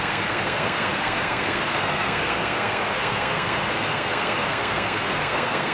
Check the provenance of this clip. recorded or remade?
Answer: remade